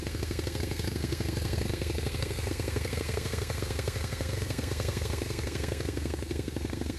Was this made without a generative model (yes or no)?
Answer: no